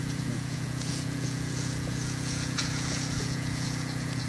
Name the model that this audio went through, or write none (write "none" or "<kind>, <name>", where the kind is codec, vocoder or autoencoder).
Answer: vocoder, Vocos